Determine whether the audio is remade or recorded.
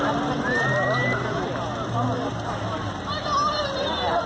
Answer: recorded